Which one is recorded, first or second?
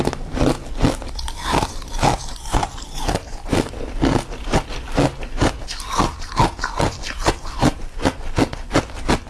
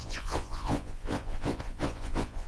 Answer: first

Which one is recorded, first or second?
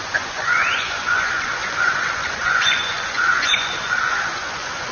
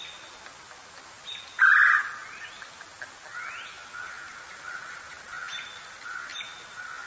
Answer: second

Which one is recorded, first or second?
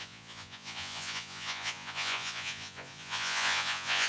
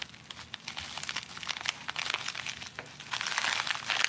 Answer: second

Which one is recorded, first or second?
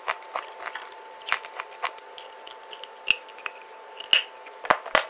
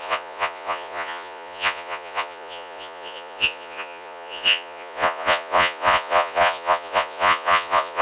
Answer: first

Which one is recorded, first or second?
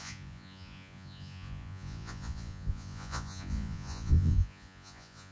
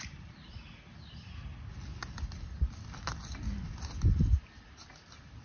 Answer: second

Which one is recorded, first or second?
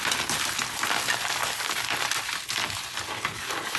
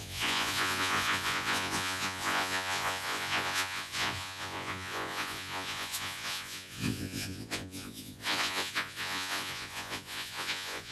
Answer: first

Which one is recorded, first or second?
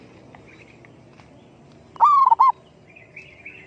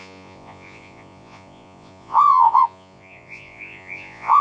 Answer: first